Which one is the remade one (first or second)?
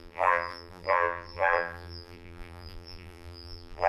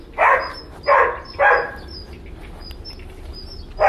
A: first